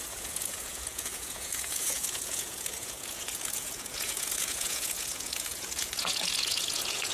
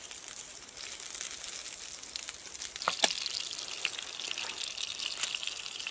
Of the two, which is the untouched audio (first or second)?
second